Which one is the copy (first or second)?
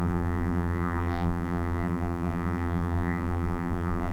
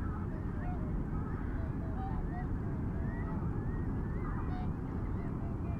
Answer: first